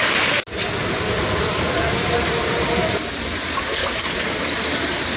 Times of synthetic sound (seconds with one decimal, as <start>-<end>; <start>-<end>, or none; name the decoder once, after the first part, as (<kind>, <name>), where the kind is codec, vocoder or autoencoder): 0.8-3.0 (vocoder, BigVGAN v2); 3.8-4.6